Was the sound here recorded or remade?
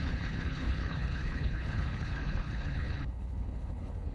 remade